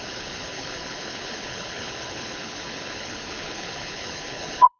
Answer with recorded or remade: remade